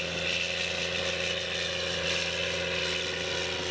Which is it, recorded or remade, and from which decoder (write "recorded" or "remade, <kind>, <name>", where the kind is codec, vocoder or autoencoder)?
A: recorded